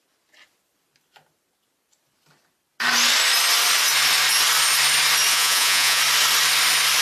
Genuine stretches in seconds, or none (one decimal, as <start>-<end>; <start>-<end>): 0.0-5.3; 6.0-7.0